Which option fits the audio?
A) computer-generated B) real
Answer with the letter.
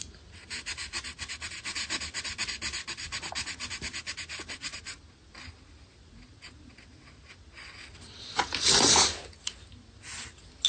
B